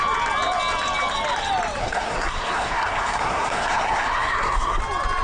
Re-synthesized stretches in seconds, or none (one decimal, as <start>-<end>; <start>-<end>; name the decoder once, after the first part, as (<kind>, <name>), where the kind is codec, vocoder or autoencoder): 1.8-4.8 (codec, SNAC)